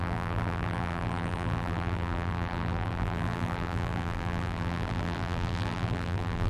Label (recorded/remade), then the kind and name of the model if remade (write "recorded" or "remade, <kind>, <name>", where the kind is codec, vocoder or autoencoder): remade, vocoder, BigVGAN v2